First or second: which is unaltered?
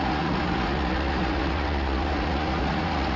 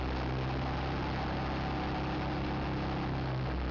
second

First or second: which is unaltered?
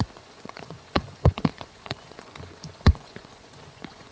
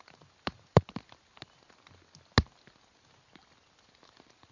second